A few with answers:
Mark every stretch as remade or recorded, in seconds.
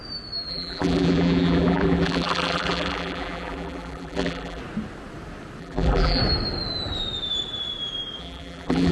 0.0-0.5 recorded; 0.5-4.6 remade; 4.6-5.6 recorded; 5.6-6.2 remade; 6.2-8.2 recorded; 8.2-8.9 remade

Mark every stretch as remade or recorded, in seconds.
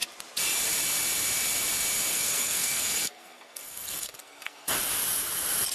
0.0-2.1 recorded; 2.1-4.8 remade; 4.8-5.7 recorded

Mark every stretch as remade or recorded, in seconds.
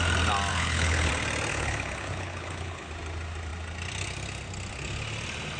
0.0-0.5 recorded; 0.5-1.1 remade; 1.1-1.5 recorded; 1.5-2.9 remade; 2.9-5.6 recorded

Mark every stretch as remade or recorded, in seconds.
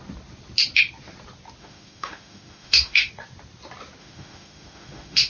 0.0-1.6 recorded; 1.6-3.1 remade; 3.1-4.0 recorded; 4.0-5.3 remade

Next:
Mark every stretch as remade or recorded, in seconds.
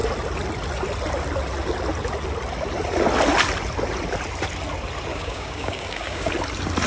0.0-5.1 recorded; 5.1-6.3 remade; 6.3-6.9 recorded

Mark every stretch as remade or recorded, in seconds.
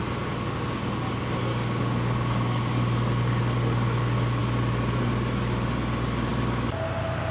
0.0-1.5 recorded; 1.5-2.8 remade; 2.8-7.3 recorded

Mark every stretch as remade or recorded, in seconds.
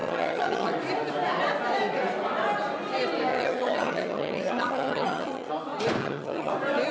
0.0-0.7 remade; 0.7-3.3 recorded; 3.3-5.5 remade; 5.5-6.0 recorded; 6.0-6.5 remade; 6.5-6.9 recorded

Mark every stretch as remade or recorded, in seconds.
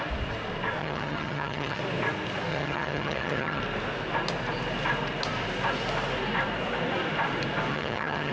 0.0-0.8 recorded; 0.8-1.8 remade; 1.8-2.5 recorded; 2.5-3.6 remade; 3.6-7.7 recorded; 7.7-8.3 remade